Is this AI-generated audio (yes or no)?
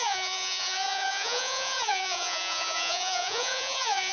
yes